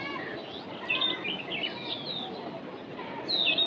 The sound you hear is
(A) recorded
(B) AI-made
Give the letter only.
A